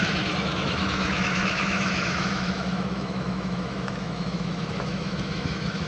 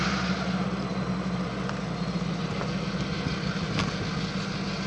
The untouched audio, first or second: second